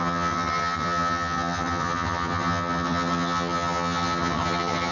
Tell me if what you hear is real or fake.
fake